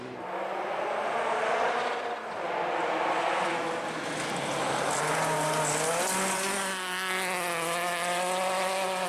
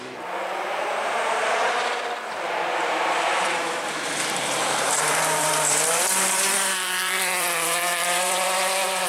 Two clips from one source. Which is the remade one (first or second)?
second